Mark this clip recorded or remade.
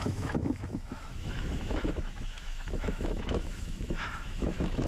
remade